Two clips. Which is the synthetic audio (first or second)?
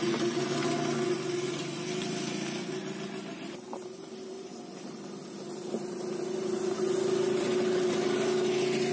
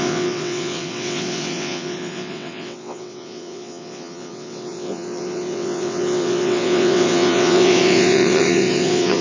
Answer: second